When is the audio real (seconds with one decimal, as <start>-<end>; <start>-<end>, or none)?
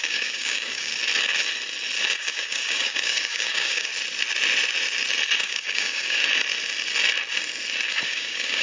0.9-2.0; 3.9-5.4; 6.2-8.0